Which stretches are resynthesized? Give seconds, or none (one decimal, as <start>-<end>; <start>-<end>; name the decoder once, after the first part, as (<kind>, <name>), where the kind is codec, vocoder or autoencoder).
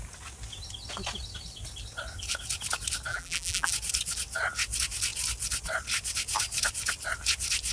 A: 3.1-3.7 (vocoder, BigVGAN v2)